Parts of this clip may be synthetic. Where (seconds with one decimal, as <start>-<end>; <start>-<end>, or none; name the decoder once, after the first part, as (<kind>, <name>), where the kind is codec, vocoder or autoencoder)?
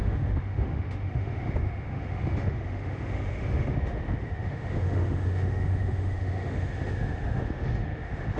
0.0-8.4 (autoencoder, DAC-VAE)